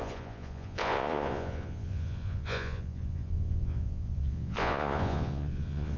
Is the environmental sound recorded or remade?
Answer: remade